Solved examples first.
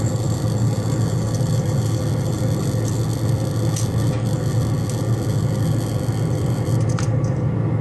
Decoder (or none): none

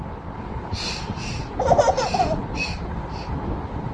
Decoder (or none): none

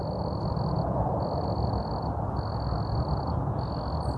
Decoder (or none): none